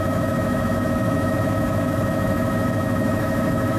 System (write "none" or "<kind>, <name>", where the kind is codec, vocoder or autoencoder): autoencoder, DAC-VAE